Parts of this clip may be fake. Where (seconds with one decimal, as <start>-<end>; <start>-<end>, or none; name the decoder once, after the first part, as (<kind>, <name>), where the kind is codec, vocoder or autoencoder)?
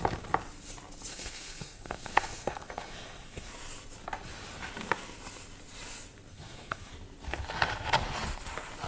1.1-3.5 (codec, SNAC); 6.3-6.9